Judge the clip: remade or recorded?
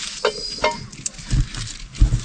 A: recorded